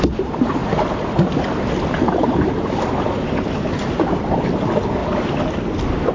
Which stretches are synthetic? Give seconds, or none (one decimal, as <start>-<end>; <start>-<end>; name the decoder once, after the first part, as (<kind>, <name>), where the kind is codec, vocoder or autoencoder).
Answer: none